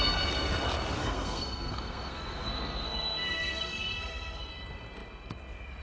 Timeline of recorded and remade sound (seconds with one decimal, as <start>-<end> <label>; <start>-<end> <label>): 0.0-1.0 recorded; 1.0-4.5 remade; 4.5-5.8 recorded